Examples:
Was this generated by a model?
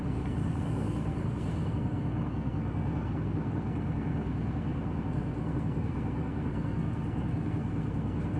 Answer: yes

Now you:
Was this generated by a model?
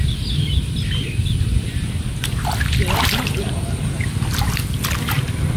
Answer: no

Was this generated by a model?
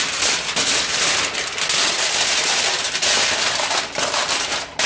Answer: no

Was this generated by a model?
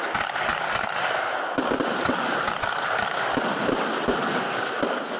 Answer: no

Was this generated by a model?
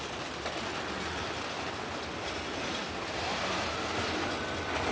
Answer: no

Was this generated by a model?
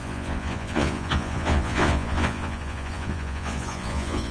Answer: yes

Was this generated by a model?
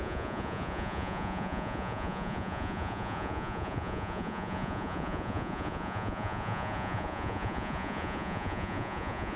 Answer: yes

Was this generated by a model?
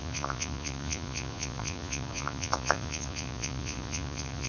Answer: yes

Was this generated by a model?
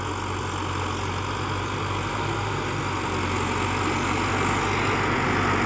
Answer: no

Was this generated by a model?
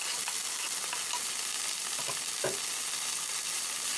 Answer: no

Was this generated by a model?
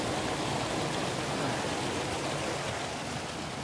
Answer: no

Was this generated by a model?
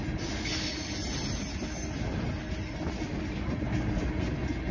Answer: no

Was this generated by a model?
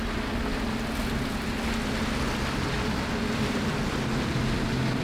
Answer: no